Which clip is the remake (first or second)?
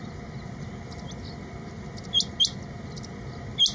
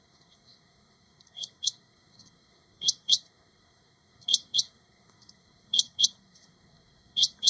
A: second